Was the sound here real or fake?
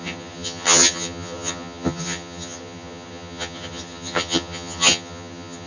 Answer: fake